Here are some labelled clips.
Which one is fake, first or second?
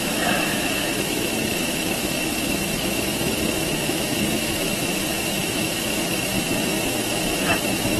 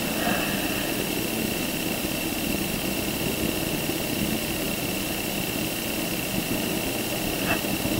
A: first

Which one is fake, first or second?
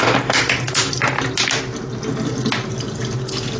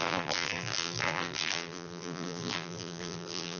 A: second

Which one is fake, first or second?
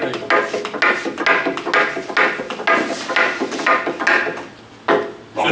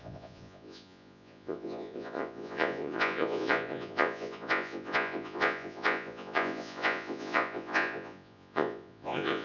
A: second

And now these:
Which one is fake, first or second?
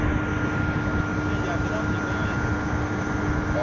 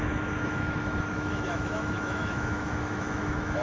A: second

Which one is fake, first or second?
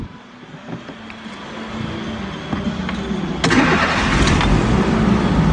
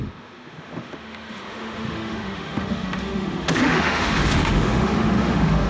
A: second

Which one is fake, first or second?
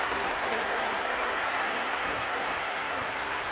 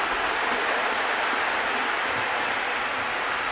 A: first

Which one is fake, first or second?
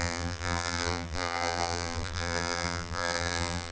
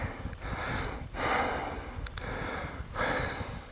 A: first